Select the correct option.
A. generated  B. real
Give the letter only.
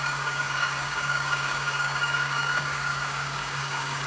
A